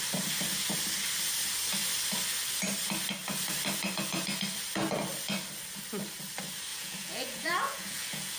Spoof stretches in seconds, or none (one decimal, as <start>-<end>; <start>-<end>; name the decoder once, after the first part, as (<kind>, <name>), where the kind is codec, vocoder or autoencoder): 6.7-8.4 (vocoder, Vocos)